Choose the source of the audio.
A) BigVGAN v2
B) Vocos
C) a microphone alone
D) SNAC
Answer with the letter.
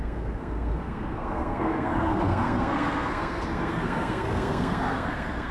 D